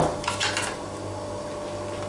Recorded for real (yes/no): yes